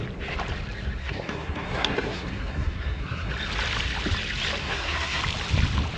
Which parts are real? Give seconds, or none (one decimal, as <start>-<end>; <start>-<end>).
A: 0.0-1.0; 3.3-4.6; 5.2-6.0